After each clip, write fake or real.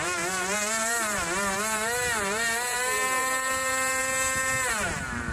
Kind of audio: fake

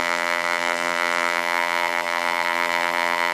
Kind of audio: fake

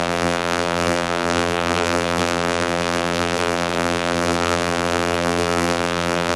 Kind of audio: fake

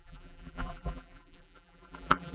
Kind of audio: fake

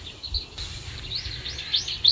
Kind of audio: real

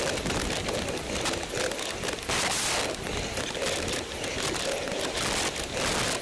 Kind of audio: real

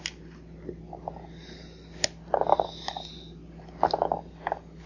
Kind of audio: real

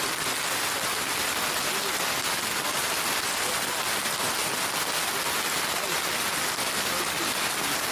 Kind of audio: real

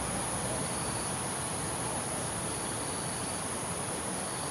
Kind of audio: real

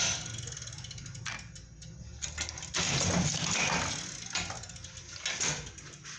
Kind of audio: real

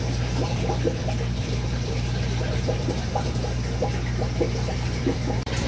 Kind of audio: fake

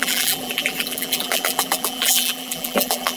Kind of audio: fake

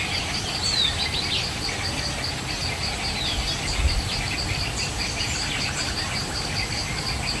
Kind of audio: real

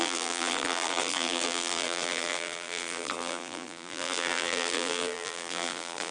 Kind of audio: fake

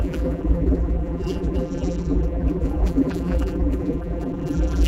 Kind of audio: fake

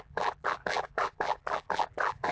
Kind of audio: fake